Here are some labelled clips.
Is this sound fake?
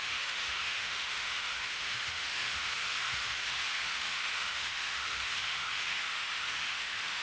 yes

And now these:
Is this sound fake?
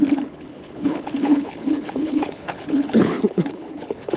yes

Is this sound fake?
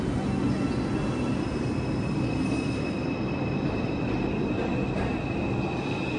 no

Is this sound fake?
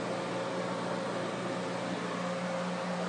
no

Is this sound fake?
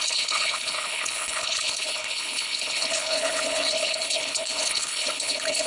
yes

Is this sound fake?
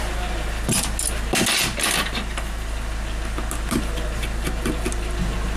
no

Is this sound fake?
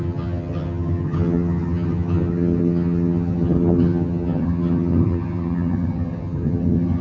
yes